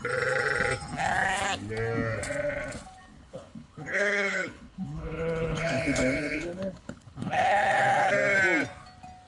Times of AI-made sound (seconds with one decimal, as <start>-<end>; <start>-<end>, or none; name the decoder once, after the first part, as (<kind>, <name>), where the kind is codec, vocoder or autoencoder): 3.1-8.1 (codec, HILCodec)